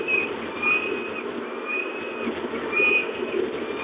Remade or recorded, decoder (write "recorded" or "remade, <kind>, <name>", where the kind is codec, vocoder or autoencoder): recorded